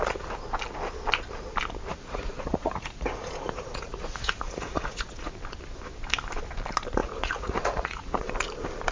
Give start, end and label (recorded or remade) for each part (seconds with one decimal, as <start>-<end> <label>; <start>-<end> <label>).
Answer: 0.0-1.9 recorded; 1.9-5.3 remade; 5.3-7.0 recorded; 7.0-8.3 remade; 8.3-8.9 recorded